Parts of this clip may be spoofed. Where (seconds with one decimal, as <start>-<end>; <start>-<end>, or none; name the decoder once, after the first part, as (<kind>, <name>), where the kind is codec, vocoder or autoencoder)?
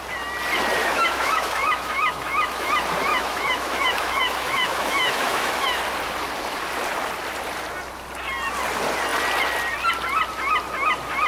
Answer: 0.8-2.7 (autoencoder, DAC-VAE); 3.1-5.8